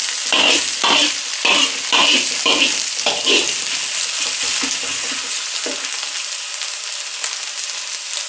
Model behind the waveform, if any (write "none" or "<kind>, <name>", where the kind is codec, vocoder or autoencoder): none